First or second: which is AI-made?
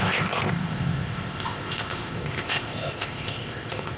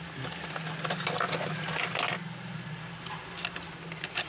first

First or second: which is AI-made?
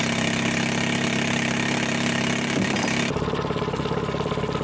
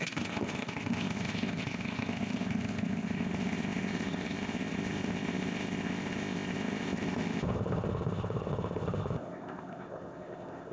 second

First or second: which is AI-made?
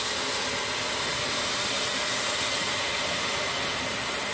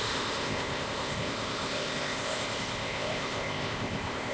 second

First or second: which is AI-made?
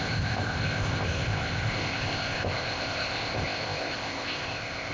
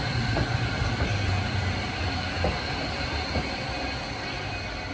first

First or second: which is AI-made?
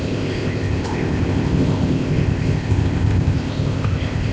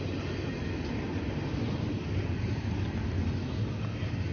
first